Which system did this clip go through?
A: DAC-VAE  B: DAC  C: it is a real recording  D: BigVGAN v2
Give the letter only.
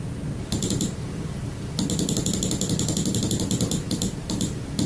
C